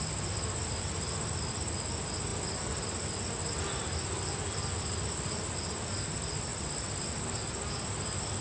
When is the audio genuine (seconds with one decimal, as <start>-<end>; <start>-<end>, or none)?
0.0-8.4